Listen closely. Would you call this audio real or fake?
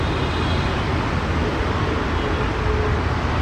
real